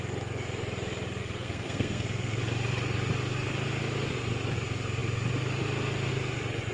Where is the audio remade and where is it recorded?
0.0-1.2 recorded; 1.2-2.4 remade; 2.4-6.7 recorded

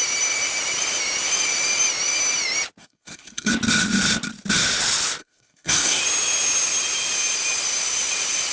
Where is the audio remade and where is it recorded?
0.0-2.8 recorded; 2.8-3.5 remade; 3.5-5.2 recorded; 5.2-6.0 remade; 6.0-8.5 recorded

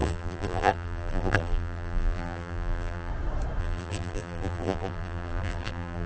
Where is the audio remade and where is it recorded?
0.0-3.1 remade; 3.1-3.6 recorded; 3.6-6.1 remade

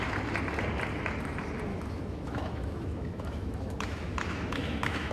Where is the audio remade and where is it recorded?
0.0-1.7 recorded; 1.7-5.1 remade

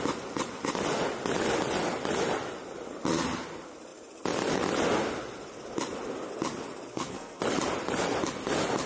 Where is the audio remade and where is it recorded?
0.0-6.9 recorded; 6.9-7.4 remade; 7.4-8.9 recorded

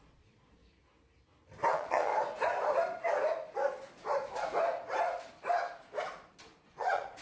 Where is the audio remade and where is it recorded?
0.0-0.6 remade; 0.6-1.7 recorded; 1.7-2.1 remade; 2.1-6.4 recorded; 6.4-7.2 remade